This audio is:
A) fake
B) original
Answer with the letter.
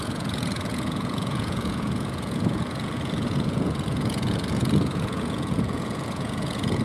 A